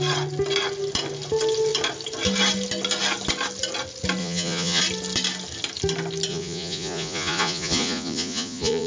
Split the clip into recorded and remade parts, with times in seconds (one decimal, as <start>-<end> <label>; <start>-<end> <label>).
0.0-4.2 recorded; 4.2-4.8 remade; 4.8-6.3 recorded; 6.3-8.9 remade